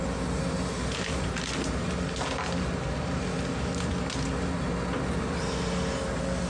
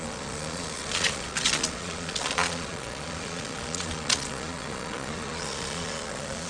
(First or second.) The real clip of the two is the first